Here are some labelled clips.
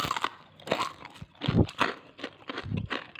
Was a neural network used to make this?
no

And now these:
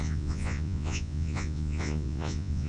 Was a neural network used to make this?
yes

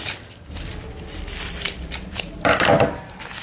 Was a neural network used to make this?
no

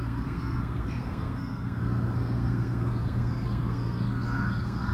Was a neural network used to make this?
yes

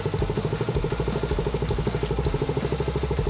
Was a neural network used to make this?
no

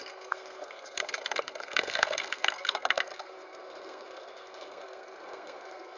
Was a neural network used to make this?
yes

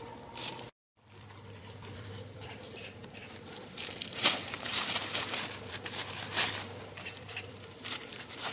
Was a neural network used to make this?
yes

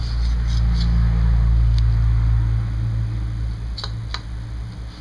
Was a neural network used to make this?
no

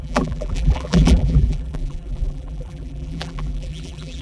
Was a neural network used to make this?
yes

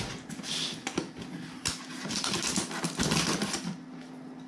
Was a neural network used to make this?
no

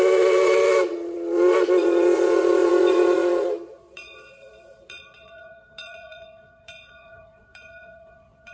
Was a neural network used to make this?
yes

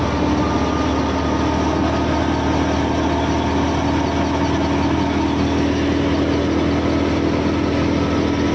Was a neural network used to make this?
no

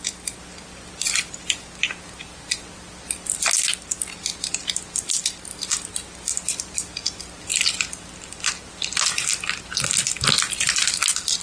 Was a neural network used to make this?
no